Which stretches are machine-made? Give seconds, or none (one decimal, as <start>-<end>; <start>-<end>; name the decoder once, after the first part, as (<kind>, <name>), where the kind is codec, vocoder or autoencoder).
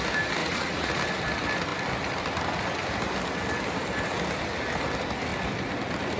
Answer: 0.4-1.0 (vocoder, Vocos)